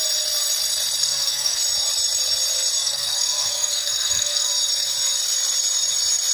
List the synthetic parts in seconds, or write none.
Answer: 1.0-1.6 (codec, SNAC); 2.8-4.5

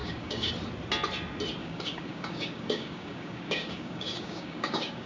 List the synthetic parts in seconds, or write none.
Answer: 0.0-0.5 (codec, DAC); 1.6-5.1

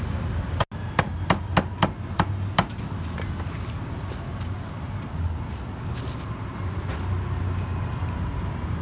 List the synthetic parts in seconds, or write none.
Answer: none

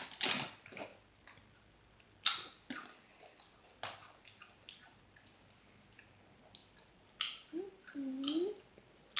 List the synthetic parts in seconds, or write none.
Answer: 6.6-8.6 (vocoder, BigVGAN v2)

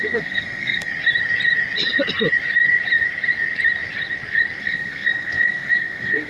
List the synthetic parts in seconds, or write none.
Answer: 0.0-0.9 (codec, SNAC); 4.6-6.3

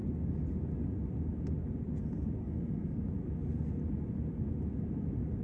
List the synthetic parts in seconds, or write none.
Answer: 2.4-3.0 (codec, SNAC)